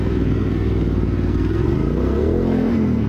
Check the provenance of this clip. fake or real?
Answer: fake